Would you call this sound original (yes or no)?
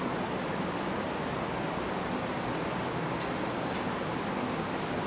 yes